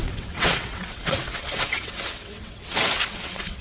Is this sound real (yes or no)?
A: no